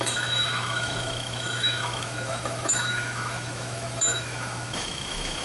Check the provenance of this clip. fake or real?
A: fake